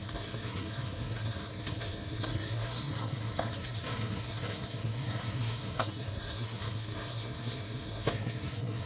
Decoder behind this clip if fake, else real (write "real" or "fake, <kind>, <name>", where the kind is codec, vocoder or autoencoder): fake, codec, SNAC